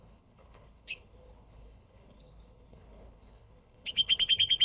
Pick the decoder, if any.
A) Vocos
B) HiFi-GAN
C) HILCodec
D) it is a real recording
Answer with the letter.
C